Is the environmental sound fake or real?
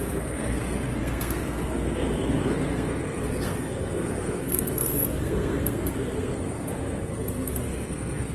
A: fake